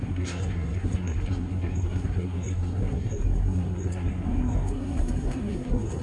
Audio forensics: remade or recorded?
remade